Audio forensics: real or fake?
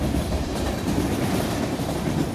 fake